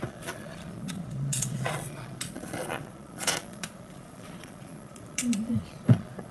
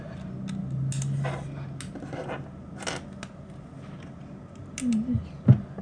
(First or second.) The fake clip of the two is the first